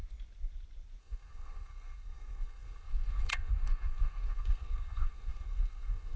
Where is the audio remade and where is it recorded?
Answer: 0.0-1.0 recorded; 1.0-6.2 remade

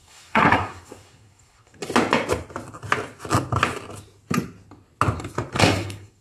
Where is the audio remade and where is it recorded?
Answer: 0.0-1.8 remade; 1.8-5.5 recorded; 5.5-6.2 remade

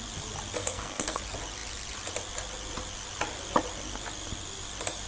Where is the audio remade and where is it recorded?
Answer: 0.0-0.6 recorded; 0.6-1.2 remade; 1.2-5.1 recorded

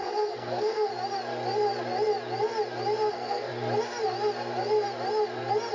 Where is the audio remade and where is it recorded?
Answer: 0.0-0.9 remade; 0.9-3.1 recorded; 3.1-3.5 remade; 3.5-5.7 recorded

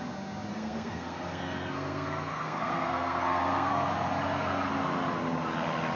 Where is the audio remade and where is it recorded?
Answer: 0.0-0.5 recorded; 0.5-3.7 remade; 3.7-6.0 recorded